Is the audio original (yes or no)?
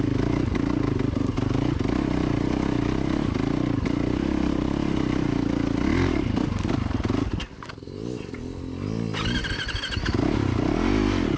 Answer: yes